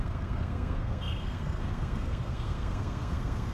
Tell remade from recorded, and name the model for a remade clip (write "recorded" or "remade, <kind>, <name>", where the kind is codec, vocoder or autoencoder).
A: remade, codec, SNAC